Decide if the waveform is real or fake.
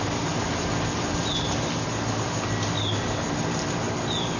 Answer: real